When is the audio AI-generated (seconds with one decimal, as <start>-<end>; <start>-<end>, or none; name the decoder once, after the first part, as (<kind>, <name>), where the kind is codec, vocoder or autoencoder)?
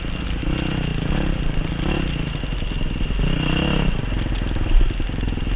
none